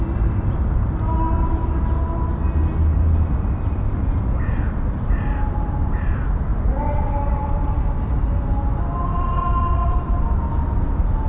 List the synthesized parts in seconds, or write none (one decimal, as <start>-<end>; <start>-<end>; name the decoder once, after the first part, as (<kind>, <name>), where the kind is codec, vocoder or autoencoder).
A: none